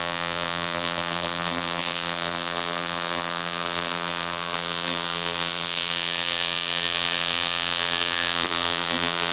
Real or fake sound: fake